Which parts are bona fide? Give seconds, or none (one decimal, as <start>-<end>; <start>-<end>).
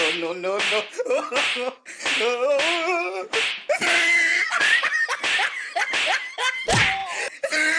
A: 0.0-1.5; 2.0-4.3; 4.9-7.8